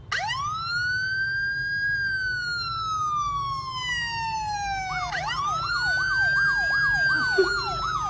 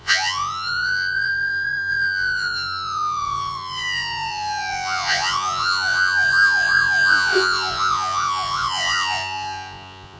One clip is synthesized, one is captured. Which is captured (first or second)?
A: first